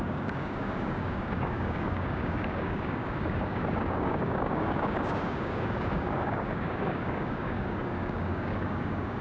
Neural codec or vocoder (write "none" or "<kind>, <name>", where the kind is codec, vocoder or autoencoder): codec, DAC